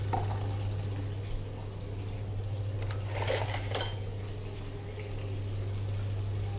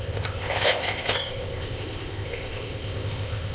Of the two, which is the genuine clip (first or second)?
first